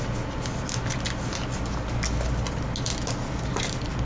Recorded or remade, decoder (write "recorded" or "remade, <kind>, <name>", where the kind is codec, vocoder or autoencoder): recorded